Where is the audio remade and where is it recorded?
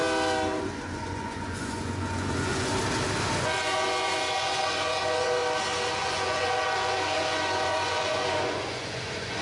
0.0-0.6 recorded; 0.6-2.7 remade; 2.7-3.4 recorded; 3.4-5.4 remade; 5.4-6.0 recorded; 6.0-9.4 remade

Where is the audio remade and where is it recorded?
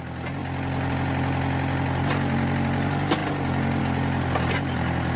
0.0-5.2 recorded